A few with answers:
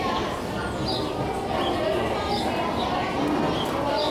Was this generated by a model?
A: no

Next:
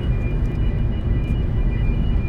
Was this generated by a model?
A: yes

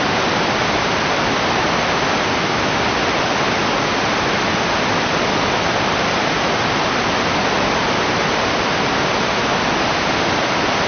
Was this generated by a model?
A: no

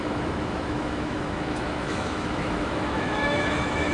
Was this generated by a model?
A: yes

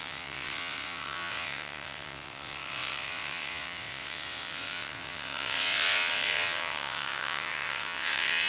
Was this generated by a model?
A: yes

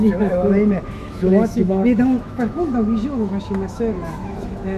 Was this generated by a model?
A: yes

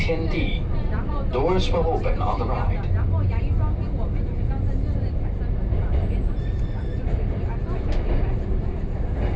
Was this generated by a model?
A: no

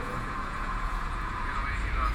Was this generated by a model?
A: yes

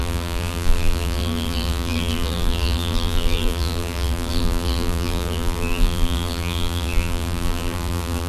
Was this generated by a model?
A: yes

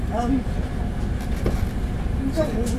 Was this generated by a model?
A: no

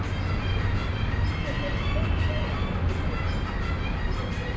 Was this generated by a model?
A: no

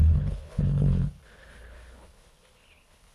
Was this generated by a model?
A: yes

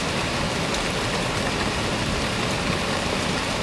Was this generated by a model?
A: no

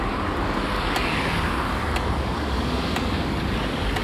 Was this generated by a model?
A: yes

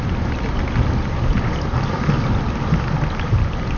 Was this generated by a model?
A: no